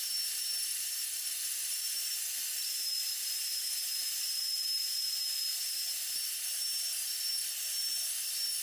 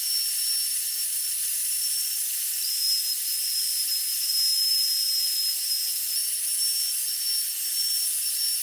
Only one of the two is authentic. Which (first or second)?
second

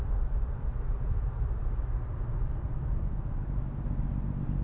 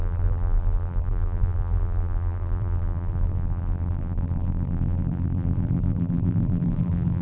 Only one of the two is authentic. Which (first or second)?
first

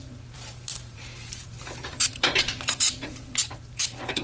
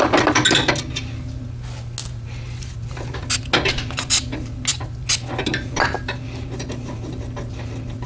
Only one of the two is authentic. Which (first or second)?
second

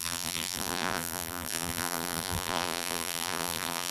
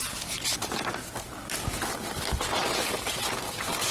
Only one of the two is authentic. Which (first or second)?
second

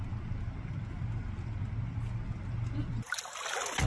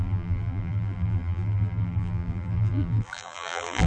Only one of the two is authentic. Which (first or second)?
first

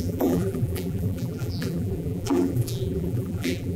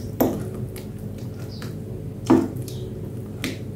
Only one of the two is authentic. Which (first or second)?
second